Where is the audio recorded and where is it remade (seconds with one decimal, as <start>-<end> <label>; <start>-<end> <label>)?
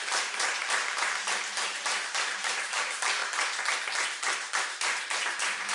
0.0-3.2 remade; 3.2-4.7 recorded; 4.7-5.7 remade